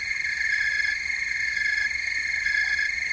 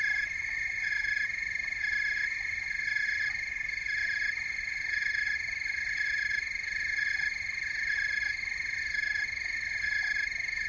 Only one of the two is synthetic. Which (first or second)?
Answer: first